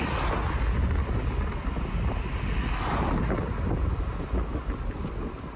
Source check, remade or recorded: recorded